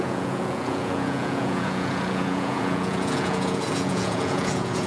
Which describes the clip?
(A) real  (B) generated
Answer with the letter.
B